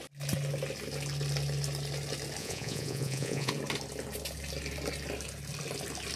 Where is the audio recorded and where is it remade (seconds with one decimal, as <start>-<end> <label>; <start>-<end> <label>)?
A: 0.0-2.4 recorded; 2.4-3.5 remade; 3.5-6.2 recorded

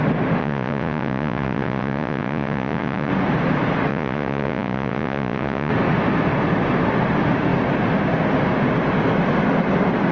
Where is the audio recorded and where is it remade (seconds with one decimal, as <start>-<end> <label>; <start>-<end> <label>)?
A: 0.0-0.4 recorded; 0.4-3.1 remade; 3.1-3.9 recorded; 3.9-5.7 remade; 5.7-10.1 recorded